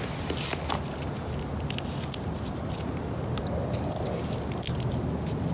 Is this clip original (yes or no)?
yes